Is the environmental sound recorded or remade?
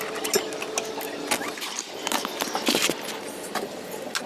recorded